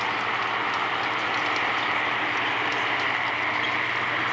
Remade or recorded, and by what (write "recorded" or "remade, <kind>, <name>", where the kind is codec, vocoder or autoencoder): recorded